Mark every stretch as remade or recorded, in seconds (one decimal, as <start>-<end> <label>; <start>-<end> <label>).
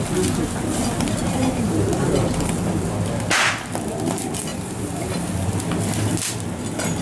0.0-1.2 recorded; 1.2-2.3 remade; 2.3-4.5 recorded; 4.5-5.3 remade; 5.3-7.0 recorded